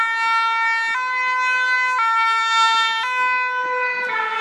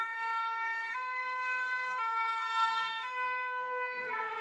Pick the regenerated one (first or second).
second